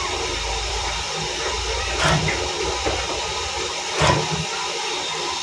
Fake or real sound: fake